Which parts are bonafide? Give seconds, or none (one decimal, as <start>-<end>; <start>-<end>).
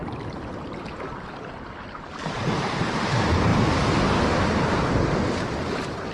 0.0-6.1